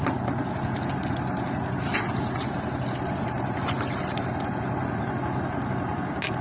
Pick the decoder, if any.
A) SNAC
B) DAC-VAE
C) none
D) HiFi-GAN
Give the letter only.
C